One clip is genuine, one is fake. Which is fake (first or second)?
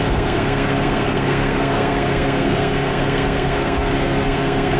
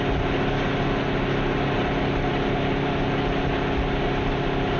first